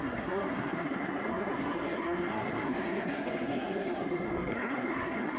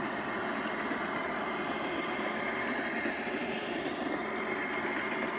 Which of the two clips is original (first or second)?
second